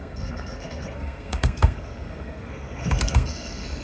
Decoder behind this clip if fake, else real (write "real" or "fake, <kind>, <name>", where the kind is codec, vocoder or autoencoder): fake, codec, SNAC